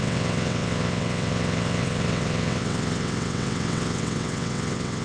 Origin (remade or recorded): remade